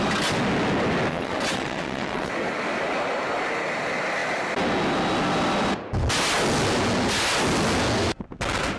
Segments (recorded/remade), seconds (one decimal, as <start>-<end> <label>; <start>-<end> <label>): 0.0-1.1 recorded; 1.1-2.3 remade; 2.3-8.8 recorded